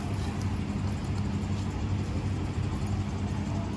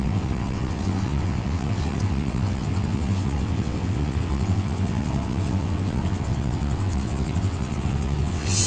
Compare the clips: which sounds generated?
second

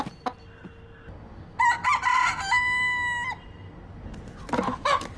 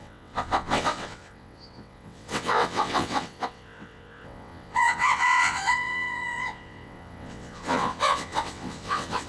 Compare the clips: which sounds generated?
second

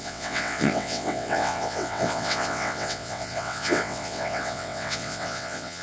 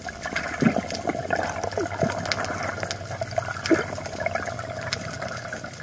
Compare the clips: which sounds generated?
first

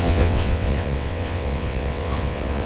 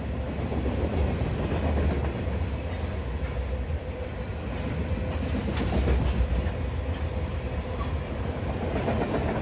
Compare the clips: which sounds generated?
first